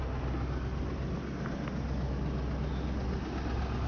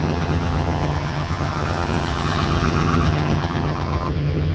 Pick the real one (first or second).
first